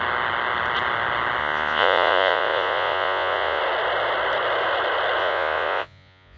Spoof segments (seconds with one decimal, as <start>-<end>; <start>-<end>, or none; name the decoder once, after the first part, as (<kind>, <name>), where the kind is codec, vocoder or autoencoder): 1.4-3.6 (vocoder, Vocos); 5.2-6.4